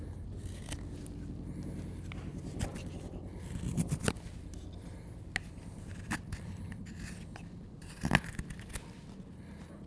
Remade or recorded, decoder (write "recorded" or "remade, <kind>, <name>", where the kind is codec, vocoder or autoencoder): recorded